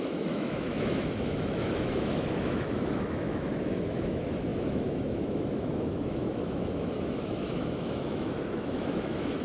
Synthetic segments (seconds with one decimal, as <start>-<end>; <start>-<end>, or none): 0.0-9.4